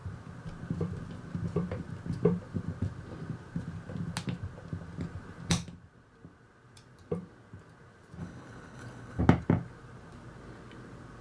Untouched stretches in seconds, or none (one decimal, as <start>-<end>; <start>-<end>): 0.0-8.2; 9.2-11.2